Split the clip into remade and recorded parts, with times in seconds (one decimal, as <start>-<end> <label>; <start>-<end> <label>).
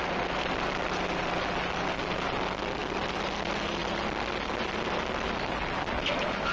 0.0-6.5 recorded